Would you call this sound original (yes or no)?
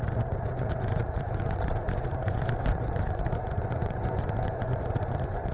no